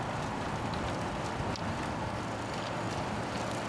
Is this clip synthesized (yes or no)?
no